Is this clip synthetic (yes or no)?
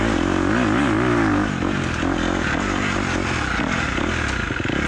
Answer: no